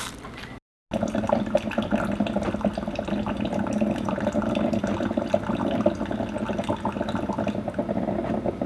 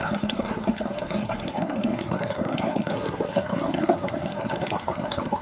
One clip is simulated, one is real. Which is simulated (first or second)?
second